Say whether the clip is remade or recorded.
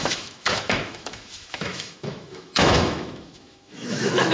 remade